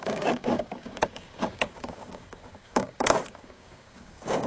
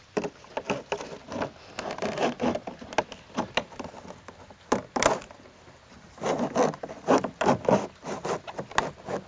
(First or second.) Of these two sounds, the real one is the second